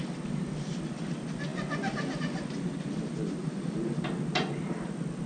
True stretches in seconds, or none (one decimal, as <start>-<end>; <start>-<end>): 0.0-5.3